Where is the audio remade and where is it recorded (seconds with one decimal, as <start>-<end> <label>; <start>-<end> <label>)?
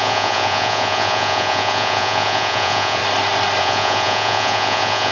0.0-3.0 remade; 3.0-3.6 recorded; 3.6-5.1 remade